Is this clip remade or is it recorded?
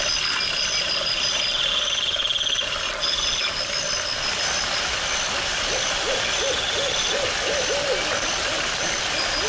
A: recorded